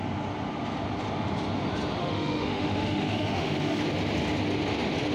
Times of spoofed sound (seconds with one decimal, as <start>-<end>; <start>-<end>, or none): 2.0-3.8